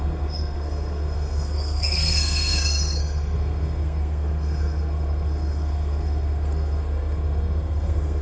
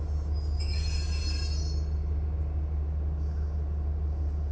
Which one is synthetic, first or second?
first